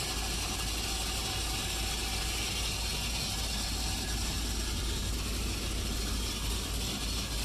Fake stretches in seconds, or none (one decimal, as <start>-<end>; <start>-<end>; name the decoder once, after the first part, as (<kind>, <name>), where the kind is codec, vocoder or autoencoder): none